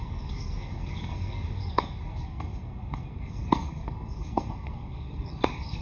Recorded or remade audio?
remade